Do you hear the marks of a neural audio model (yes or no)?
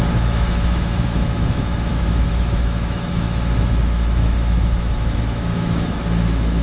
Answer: yes